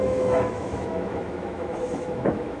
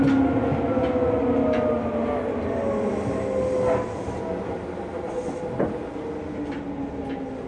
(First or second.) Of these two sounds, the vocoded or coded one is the first